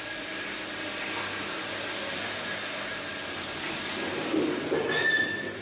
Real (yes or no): yes